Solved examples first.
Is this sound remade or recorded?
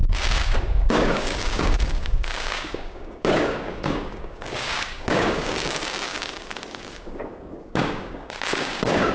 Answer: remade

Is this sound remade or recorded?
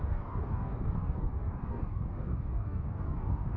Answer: remade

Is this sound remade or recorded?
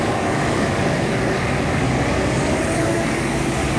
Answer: remade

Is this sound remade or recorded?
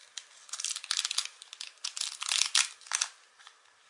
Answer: recorded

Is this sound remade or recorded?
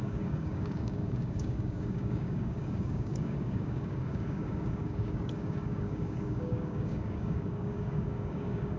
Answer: remade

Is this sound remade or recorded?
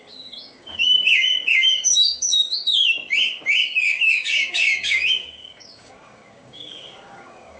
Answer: remade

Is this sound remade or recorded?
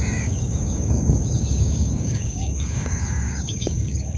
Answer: remade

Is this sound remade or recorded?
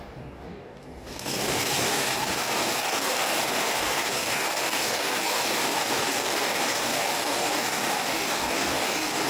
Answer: remade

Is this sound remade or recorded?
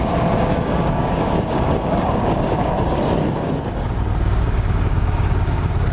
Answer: remade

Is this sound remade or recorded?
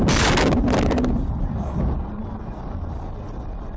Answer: recorded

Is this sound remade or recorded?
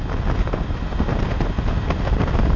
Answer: recorded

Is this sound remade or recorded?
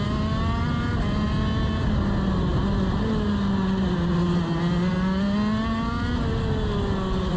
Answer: recorded